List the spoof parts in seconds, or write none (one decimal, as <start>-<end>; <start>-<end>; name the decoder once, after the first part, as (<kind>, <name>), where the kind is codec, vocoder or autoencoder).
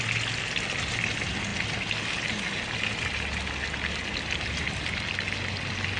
none